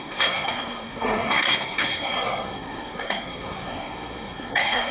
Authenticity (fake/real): fake